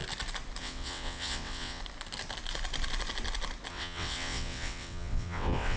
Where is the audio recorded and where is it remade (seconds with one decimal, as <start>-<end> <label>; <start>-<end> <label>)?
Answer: 0.0-0.6 recorded; 0.6-1.8 remade; 1.8-3.7 recorded; 3.7-5.8 remade